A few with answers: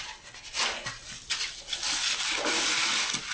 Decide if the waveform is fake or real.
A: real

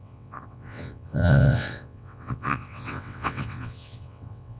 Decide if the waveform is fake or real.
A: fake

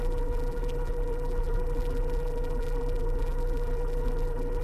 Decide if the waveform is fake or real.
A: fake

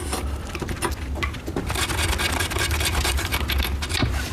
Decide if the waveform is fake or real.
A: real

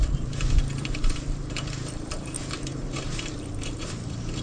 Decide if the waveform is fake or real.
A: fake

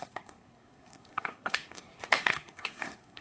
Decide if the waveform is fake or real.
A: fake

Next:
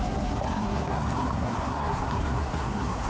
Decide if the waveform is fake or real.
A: fake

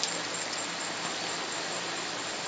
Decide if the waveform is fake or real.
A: real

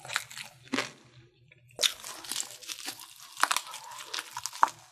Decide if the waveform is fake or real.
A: real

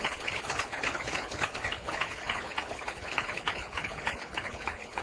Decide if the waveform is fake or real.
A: fake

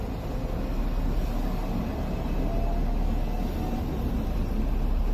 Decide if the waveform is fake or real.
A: real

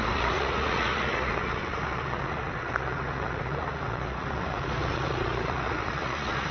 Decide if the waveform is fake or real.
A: fake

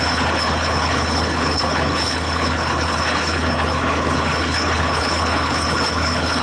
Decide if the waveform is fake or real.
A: fake